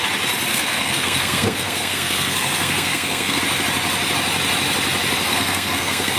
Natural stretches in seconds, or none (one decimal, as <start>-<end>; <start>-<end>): 0.0-0.5; 3.4-5.3